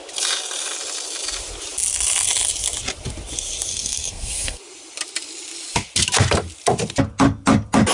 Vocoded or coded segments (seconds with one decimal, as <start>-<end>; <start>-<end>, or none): 3.7-4.6